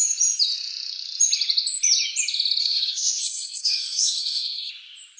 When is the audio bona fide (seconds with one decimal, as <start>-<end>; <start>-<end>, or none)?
0.0-2.6; 4.7-5.2